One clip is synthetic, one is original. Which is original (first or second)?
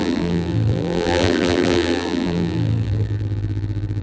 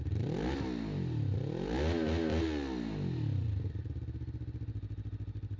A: second